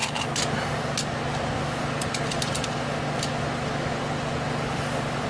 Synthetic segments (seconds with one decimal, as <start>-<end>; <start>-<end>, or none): none